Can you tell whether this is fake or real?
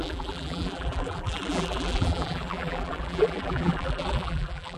fake